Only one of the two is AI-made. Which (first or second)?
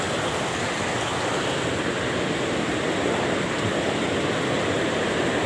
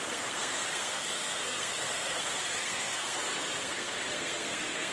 second